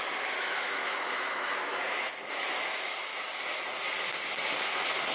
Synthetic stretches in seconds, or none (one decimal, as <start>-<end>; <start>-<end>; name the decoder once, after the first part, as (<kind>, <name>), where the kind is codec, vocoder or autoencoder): 0.0-1.7 (autoencoder, DAC-VAE); 2.3-3.1